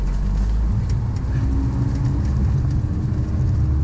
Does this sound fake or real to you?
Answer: real